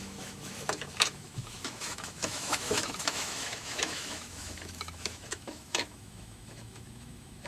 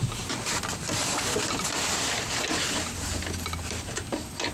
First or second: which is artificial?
first